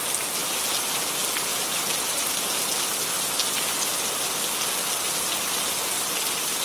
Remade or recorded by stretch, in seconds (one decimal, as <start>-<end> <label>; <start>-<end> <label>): 0.0-6.6 recorded